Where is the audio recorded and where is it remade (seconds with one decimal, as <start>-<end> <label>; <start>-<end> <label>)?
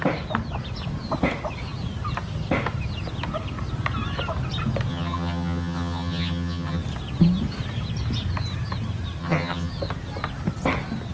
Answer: 0.0-4.9 recorded; 4.9-6.8 remade; 6.8-9.2 recorded; 9.2-9.7 remade; 9.7-11.1 recorded